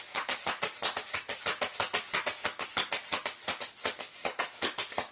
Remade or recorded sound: recorded